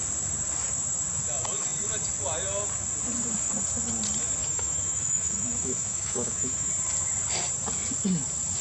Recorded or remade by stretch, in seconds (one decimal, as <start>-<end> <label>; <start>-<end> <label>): 0.0-4.4 recorded; 4.4-6.7 remade; 6.7-8.6 recorded